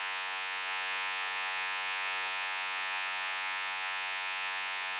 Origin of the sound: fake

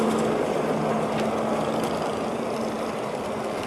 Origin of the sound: real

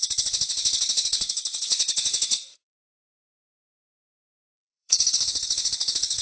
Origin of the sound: fake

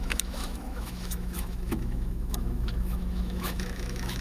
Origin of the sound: fake